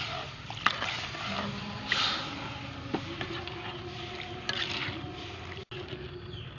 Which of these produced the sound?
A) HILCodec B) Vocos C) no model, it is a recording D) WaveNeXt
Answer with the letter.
C